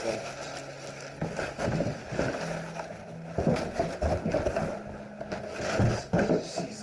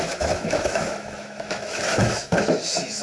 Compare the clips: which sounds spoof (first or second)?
second